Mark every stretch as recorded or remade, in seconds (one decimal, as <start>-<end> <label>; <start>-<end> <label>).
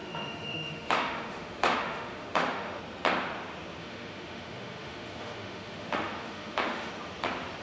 0.0-2.8 remade; 2.8-3.8 recorded; 3.8-6.9 remade; 6.9-7.6 recorded